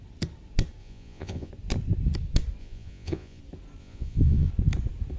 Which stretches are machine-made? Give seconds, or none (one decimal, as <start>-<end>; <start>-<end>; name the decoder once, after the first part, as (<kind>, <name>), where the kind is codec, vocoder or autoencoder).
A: 0.8-1.5 (vocoder, Vocos); 2.6-3.4; 3.8-4.5